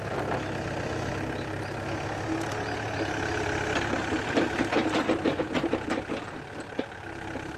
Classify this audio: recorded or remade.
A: recorded